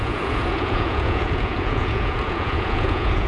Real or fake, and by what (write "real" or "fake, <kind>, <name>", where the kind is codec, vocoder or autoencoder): fake, vocoder, Vocos